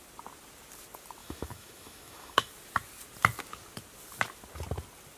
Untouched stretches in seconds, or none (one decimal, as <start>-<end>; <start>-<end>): 0.0-1.2; 2.5-5.2